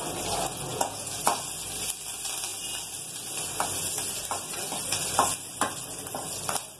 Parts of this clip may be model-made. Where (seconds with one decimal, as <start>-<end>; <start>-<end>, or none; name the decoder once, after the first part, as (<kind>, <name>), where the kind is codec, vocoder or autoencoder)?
0.7-1.2 (vocoder, Vocos)